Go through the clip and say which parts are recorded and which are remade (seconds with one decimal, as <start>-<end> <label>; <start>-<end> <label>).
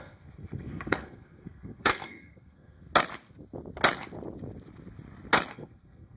0.0-2.9 remade; 2.9-5.5 recorded; 5.5-6.2 remade